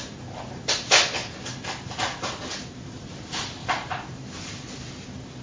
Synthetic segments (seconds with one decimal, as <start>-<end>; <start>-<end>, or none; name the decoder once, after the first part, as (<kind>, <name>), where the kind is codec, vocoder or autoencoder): 3.6-4.9 (vocoder, BigVGAN v2)